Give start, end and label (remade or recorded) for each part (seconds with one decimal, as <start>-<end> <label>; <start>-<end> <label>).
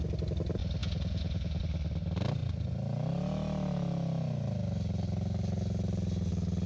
0.0-0.8 recorded; 0.8-1.6 remade; 1.6-6.7 recorded